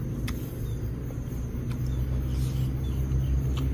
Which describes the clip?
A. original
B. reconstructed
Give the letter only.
A